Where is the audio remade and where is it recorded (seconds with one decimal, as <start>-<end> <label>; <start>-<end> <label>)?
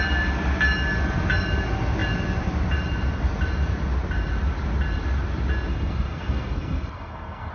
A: 0.0-5.7 recorded; 5.7-7.5 remade